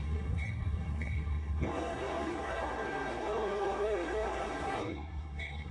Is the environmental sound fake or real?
fake